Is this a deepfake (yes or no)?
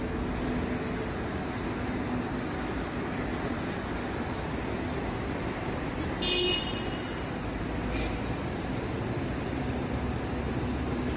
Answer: no